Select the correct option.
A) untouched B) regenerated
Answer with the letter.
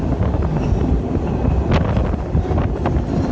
A